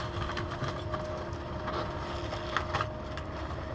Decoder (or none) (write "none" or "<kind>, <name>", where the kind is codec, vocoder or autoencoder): none